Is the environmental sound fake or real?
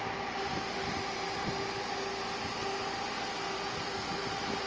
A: real